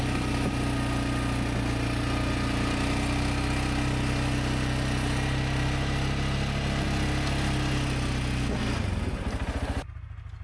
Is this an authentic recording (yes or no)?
yes